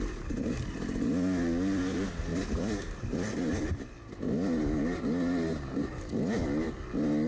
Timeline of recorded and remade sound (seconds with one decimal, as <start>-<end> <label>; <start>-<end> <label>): 0.0-7.3 recorded